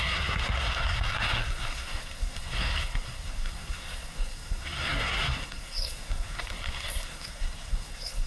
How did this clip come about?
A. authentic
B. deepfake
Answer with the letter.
B